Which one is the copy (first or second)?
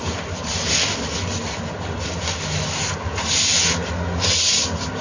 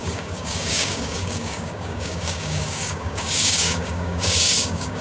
second